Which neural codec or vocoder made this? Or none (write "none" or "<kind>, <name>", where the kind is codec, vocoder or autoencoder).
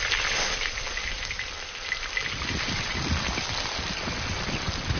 none